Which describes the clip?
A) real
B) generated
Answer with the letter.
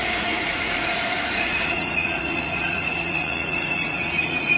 B